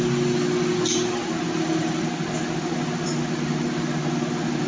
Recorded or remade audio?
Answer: recorded